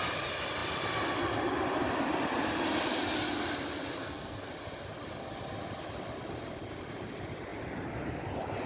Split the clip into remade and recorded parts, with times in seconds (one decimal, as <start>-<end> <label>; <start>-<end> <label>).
0.0-4.0 recorded; 4.0-4.5 remade; 4.5-8.7 recorded